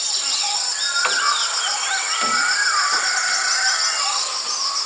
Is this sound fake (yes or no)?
no